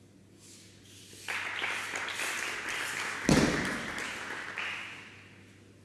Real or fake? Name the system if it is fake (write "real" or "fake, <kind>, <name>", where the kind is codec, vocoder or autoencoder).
real